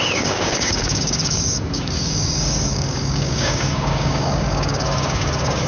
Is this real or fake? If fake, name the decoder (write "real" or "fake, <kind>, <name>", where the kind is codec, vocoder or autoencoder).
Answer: fake, codec, DAC